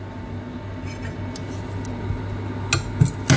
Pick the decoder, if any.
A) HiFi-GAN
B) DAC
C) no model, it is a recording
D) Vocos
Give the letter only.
C